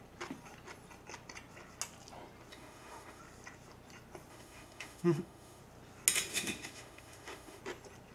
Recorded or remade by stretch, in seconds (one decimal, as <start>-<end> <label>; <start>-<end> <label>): 0.0-2.5 recorded; 2.5-3.2 remade; 3.2-4.3 recorded; 4.3-5.6 remade; 5.6-6.3 recorded; 6.3-7.6 remade; 7.6-8.1 recorded